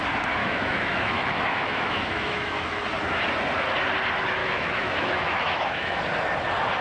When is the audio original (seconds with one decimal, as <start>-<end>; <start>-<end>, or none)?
0.0-0.4; 2.8-4.4; 6.0-6.8